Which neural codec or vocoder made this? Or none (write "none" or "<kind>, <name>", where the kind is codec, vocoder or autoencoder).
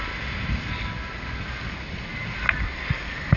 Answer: none